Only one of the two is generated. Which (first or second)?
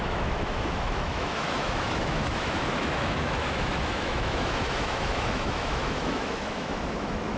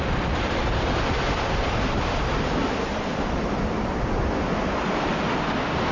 first